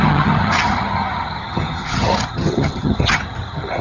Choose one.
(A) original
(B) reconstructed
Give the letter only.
B